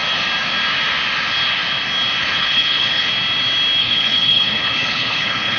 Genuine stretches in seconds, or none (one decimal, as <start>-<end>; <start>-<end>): 0.0-2.2; 3.1-3.8

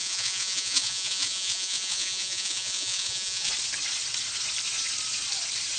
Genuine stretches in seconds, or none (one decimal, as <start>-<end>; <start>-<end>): 3.5-5.8

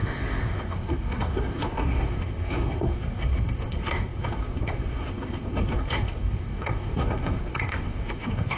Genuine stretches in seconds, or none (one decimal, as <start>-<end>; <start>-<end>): none

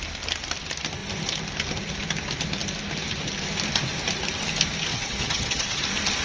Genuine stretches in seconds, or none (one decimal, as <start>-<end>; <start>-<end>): 0.0-4.9; 5.8-6.2

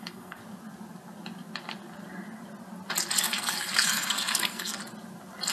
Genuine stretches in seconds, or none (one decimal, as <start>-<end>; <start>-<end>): 0.4-3.2; 4.8-5.5

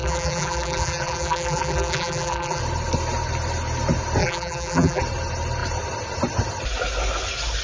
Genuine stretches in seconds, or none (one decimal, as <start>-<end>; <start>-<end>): 2.6-4.2; 5.0-7.6

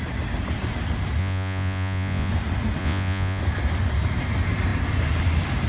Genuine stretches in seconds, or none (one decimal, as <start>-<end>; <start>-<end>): 0.0-1.2; 2.3-2.8; 3.4-5.7

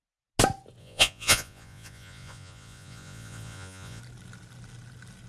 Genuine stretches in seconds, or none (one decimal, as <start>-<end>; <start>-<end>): 0.0-0.8; 4.0-5.3